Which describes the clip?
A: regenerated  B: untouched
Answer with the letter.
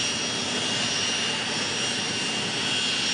B